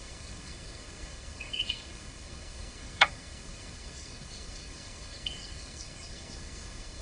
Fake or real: fake